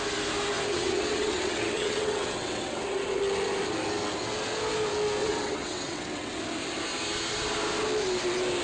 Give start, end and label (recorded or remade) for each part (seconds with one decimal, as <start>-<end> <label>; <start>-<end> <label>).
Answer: 0.0-0.7 recorded; 0.7-3.2 remade; 3.2-5.2 recorded; 5.2-6.4 remade; 6.4-8.6 recorded